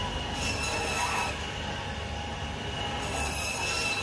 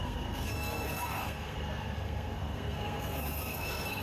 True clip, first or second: first